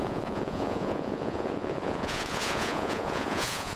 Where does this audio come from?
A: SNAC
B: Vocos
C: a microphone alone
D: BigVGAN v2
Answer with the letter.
B